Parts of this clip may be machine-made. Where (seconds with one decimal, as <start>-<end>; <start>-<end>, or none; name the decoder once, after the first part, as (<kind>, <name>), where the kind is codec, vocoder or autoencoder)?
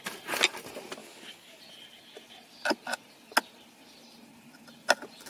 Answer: 1.0-1.6 (codec, DAC)